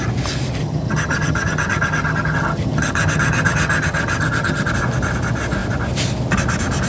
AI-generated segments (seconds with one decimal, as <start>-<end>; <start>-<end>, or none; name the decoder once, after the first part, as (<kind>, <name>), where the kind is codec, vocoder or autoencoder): 0.6-4.7 (vocoder, HiFi-GAN)